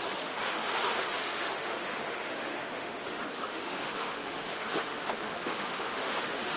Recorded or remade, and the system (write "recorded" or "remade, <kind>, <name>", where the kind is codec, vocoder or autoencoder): remade, autoencoder, DAC-VAE